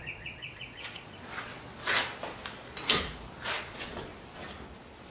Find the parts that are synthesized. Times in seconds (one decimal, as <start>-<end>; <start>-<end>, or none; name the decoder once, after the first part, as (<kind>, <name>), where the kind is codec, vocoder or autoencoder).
0.0-1.5 (vocoder, Vocos); 3.6-4.1